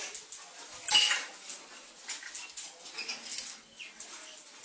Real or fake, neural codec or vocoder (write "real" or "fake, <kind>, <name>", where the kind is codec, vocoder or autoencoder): real